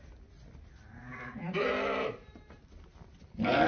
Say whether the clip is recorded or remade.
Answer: recorded